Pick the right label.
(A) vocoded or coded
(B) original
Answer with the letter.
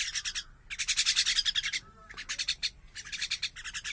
B